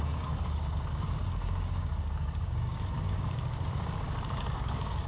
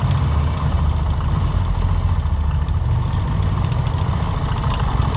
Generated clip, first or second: first